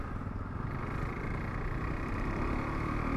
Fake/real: real